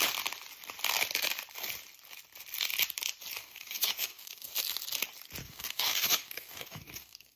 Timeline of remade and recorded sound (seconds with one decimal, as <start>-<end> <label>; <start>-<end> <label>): 0.0-3.4 recorded; 3.4-4.5 remade; 4.5-5.4 recorded; 5.4-7.4 remade